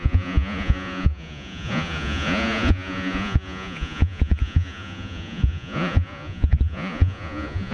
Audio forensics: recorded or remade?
remade